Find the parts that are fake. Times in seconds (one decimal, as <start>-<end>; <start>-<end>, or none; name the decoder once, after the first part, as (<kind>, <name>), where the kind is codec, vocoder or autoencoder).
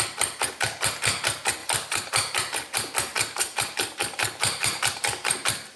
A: 1.6-2.4 (vocoder, BigVGAN v2); 3.1-5.8